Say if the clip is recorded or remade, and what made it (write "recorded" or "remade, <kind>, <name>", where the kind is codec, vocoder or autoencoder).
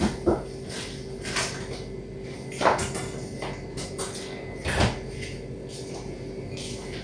recorded